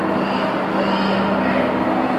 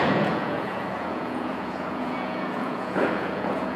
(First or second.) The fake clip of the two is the second